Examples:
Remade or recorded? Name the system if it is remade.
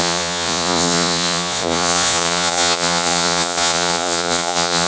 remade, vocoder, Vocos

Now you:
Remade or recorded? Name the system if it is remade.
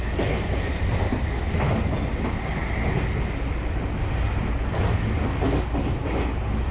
recorded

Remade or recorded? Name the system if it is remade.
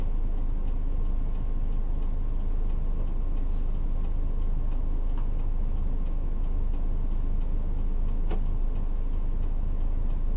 recorded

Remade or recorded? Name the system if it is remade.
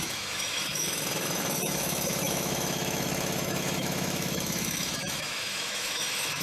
remade, autoencoder, DAC-VAE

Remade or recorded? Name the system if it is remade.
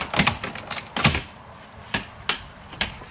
recorded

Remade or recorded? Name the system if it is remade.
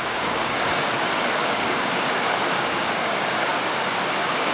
remade, codec, DAC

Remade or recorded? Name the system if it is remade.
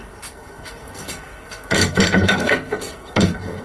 remade, codec, SNAC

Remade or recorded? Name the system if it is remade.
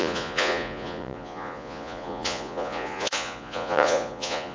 remade, vocoder, Vocos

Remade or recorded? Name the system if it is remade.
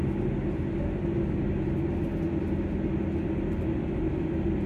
recorded